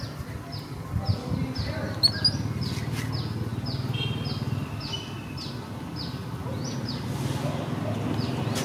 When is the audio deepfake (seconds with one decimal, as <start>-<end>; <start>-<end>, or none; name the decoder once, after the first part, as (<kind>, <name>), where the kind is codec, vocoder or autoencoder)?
none